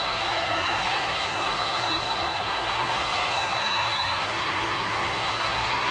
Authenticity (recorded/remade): remade